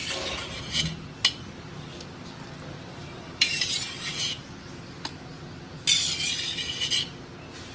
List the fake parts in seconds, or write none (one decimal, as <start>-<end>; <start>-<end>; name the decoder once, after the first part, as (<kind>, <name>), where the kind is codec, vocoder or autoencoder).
2.9-4.3 (vocoder, BigVGAN v2)